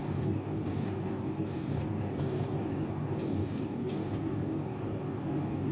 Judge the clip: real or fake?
fake